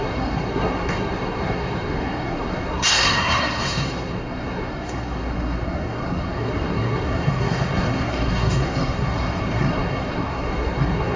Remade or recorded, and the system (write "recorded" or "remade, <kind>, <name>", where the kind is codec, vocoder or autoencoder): remade, codec, SNAC